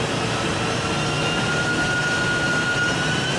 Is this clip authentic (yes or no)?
yes